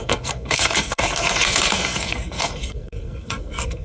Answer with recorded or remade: remade